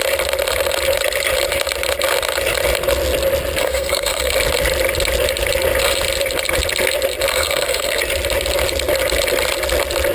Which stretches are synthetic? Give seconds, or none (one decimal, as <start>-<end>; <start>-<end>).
3.6-4.3; 7.3-8.0